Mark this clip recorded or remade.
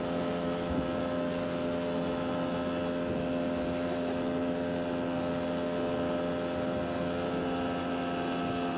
recorded